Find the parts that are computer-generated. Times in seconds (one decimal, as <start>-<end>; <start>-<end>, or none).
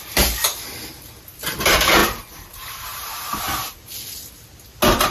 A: 2.0-3.4